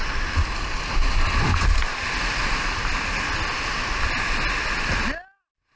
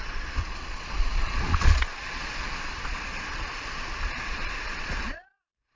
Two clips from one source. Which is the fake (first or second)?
second